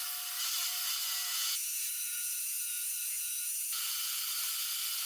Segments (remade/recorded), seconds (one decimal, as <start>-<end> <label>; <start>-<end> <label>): 0.0-1.0 recorded; 1.0-4.1 remade; 4.1-5.1 recorded